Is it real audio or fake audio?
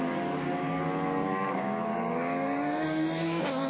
fake